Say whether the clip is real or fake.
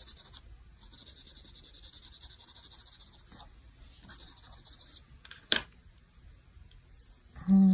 real